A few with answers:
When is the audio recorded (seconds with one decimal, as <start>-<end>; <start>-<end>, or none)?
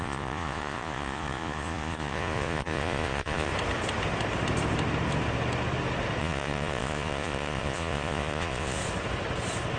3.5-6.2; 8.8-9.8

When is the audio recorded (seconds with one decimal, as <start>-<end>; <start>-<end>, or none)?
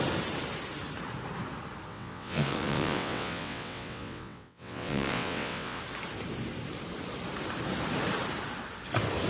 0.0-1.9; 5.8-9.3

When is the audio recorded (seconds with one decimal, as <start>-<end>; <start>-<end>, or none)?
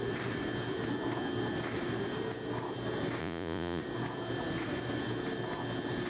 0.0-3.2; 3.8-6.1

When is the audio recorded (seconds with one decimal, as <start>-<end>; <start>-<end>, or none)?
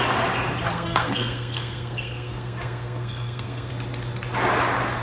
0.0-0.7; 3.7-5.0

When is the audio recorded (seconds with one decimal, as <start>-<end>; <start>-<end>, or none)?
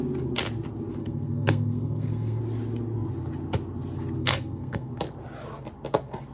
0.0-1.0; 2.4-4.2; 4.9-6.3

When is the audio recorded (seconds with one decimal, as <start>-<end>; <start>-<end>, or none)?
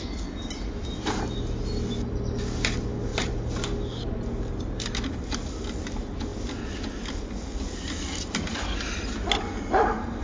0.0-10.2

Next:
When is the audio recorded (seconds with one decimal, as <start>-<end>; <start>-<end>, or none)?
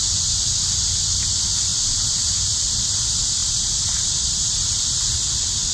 0.0-5.7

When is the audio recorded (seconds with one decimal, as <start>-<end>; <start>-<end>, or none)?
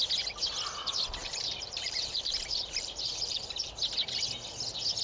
0.0-1.2; 3.7-5.0